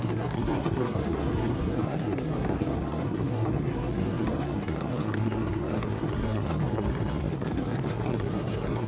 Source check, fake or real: fake